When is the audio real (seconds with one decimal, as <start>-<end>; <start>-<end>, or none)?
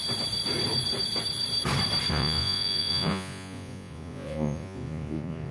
0.0-2.1